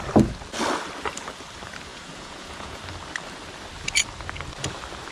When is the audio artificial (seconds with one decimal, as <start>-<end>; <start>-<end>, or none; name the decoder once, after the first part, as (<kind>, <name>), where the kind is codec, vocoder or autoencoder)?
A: 1.9-2.8 (vocoder, Vocos)